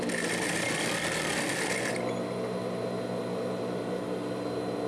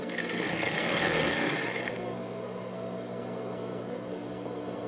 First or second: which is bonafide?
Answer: first